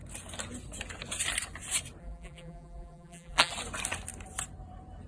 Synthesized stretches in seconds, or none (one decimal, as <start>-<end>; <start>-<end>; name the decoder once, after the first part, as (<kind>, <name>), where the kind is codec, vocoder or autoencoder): 2.0-3.5 (vocoder, BigVGAN v2)